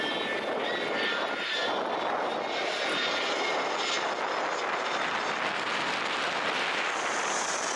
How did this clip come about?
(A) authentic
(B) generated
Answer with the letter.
A